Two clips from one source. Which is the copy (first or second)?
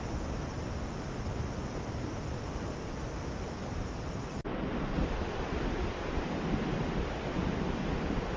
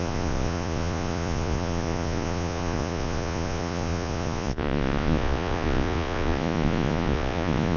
second